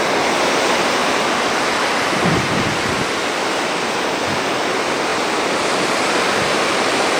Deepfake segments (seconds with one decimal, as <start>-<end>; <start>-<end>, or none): none